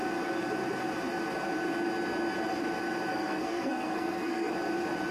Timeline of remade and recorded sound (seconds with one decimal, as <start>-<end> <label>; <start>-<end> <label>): 0.0-3.1 recorded; 3.1-4.5 remade; 4.5-5.1 recorded